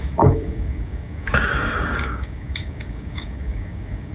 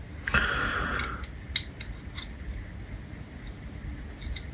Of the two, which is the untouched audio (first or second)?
second